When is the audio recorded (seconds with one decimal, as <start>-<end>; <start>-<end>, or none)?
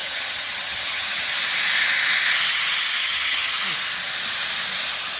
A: 1.3-3.0; 3.6-5.2